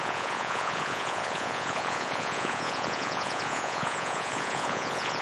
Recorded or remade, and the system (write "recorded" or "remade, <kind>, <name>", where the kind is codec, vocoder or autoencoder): remade, vocoder, Vocos